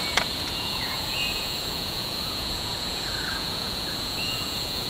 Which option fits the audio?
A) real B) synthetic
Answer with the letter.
B